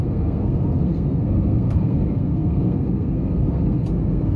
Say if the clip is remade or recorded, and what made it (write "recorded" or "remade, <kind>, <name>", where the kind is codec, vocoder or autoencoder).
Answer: remade, codec, SNAC